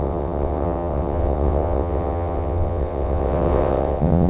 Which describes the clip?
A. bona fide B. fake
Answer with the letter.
B